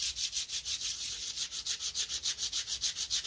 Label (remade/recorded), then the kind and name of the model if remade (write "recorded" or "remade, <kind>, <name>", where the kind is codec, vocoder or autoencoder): recorded